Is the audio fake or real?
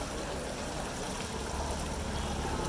real